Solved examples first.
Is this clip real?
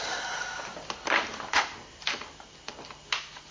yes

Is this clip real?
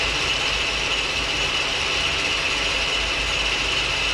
yes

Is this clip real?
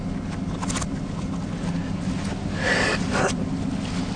yes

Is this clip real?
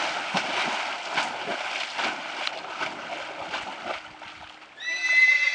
yes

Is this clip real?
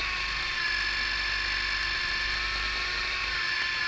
yes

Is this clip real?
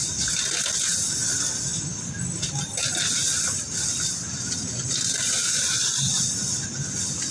yes